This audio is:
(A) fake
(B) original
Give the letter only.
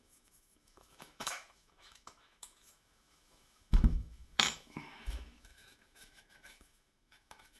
A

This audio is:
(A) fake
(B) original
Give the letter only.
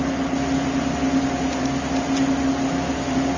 B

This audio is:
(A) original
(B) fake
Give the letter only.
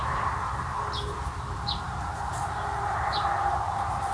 B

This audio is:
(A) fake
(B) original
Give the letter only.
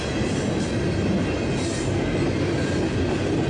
B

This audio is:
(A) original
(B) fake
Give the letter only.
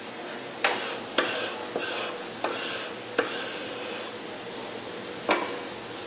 A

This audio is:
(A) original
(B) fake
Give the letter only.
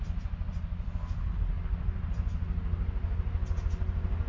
A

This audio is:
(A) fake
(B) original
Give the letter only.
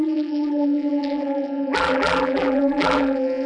A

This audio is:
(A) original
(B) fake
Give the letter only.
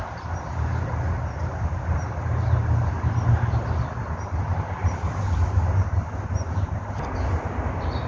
A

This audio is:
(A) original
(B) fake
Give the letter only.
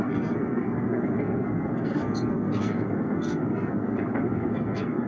B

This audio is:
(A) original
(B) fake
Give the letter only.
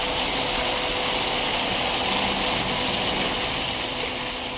A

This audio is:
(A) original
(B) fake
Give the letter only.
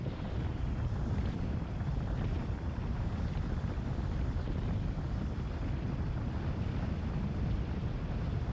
A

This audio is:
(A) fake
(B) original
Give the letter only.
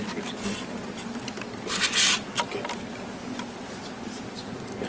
B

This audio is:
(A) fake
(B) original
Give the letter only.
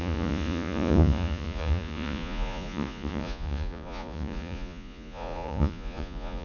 A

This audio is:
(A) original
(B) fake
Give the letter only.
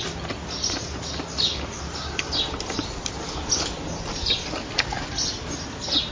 A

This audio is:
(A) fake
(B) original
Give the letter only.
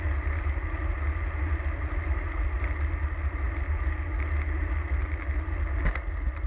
B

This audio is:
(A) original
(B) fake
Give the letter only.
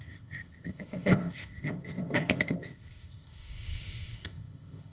B